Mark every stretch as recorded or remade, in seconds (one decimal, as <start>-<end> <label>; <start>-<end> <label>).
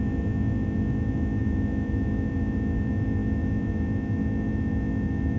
0.0-5.4 recorded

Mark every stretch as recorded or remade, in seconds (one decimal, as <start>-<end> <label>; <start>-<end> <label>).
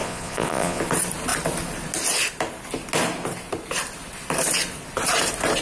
0.0-0.8 remade; 0.8-5.6 recorded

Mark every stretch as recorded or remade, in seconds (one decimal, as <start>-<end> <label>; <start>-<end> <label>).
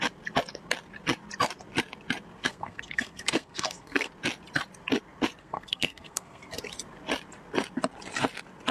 0.0-2.4 recorded; 2.4-4.1 remade; 4.1-5.4 recorded; 5.4-6.5 remade; 6.5-8.7 recorded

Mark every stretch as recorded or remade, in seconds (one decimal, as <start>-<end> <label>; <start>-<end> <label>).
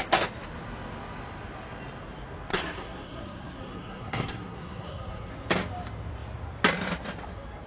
0.0-2.5 recorded; 2.5-5.3 remade; 5.3-7.7 recorded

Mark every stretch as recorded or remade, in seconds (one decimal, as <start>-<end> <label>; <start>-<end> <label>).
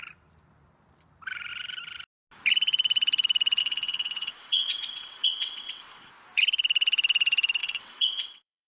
0.0-3.6 recorded; 3.6-6.1 remade; 6.1-7.6 recorded; 7.6-8.7 remade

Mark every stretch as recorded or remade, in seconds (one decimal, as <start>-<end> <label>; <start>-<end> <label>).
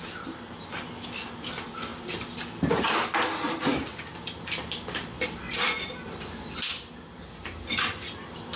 0.0-8.6 recorded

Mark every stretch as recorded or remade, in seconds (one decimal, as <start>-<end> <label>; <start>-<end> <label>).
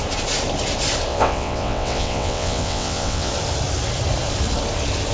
0.0-1.1 recorded; 1.1-3.3 remade; 3.3-5.1 recorded